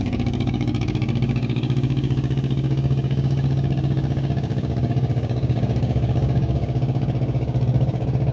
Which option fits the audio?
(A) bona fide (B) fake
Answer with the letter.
B